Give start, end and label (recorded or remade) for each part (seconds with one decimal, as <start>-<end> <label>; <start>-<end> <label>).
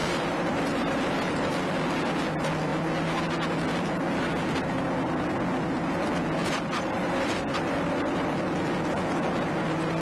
0.0-1.5 remade; 1.5-6.4 recorded; 6.4-8.5 remade; 8.5-10.0 recorded